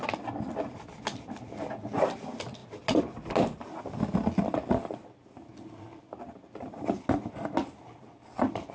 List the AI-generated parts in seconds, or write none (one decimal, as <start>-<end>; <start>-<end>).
none